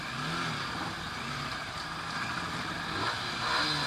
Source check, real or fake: real